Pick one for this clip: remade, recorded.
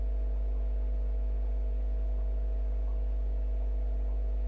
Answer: recorded